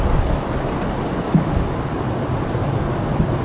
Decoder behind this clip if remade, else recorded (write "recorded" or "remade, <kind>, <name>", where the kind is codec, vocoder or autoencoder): recorded